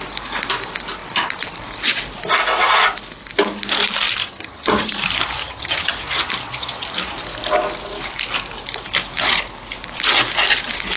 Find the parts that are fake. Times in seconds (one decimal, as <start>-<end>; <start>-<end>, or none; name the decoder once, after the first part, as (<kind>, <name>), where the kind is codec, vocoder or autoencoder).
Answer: 4.2-4.9 (vocoder, HiFi-GAN); 5.4-6.0